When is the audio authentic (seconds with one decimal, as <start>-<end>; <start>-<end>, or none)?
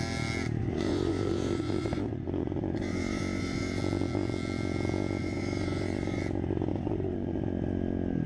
0.0-0.6; 3.8-5.2; 6.2-6.7; 7.4-8.3